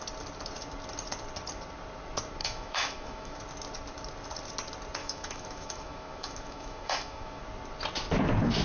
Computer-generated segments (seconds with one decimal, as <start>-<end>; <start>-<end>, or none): 2.4-3.4; 5.0-7.4